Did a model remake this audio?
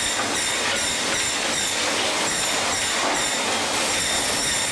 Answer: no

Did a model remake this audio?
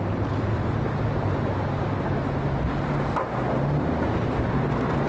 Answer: no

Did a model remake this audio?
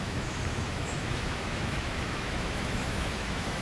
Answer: yes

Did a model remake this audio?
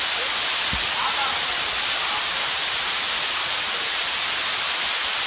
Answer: no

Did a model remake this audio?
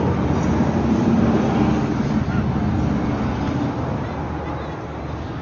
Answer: no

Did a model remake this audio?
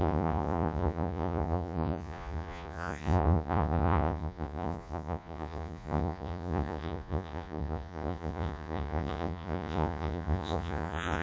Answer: yes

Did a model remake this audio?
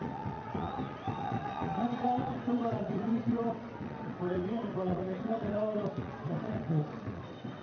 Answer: yes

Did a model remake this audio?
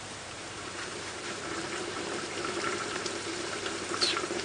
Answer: yes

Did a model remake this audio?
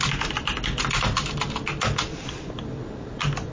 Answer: no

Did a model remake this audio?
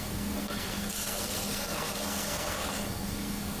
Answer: yes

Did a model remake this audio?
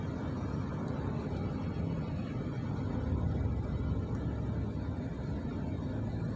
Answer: no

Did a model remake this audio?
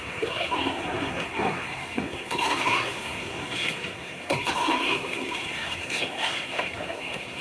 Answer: yes